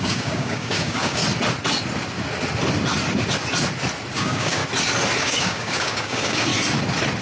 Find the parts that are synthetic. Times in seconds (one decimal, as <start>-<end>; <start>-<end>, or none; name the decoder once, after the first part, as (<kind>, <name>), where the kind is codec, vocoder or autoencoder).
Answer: 0.0-1.2 (codec, DAC); 4.1-4.6; 5.2-6.5